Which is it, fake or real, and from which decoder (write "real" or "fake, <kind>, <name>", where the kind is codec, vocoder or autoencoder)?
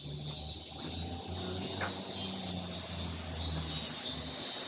real